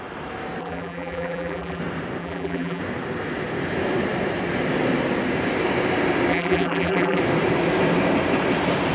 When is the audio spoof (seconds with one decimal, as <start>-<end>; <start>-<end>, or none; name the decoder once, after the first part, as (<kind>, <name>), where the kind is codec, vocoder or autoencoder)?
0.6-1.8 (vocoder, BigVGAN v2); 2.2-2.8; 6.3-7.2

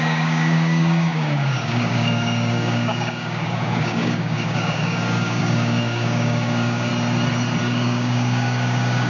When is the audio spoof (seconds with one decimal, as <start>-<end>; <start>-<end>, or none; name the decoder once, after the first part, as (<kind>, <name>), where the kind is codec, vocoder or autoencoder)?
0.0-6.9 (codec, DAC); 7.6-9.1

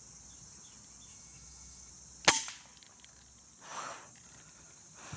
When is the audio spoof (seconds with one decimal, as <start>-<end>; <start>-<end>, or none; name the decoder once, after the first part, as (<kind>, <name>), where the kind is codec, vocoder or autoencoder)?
1.1-1.9 (autoencoder, DAC-VAE)